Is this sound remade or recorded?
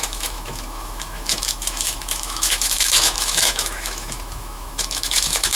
remade